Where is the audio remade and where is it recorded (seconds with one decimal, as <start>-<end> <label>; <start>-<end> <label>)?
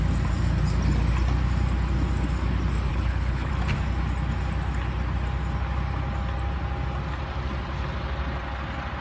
0.0-2.9 recorded; 2.9-3.5 remade; 3.5-9.0 recorded